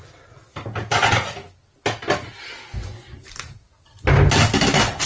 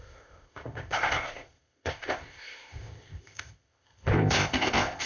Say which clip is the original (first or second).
first